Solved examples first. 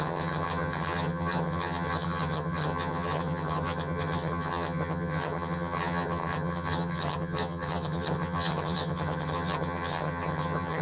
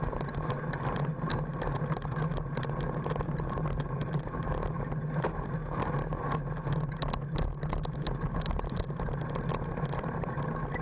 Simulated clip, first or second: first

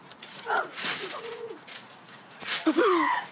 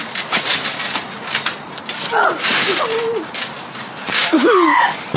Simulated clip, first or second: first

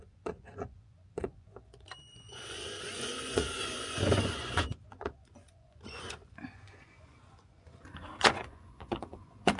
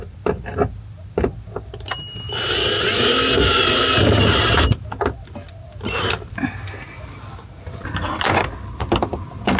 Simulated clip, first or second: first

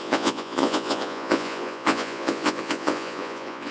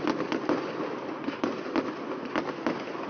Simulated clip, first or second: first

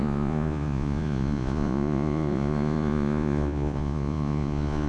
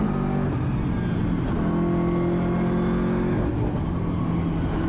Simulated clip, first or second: first